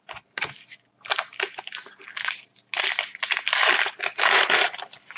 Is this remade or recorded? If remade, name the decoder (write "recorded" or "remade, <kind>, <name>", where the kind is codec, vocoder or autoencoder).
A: recorded